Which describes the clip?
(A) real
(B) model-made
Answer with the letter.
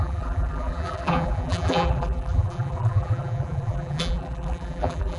B